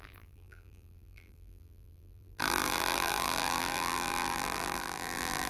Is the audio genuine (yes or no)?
no